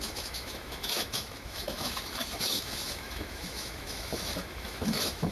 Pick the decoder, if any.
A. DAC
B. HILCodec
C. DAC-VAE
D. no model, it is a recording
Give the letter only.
C